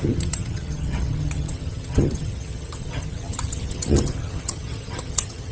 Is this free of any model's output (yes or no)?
no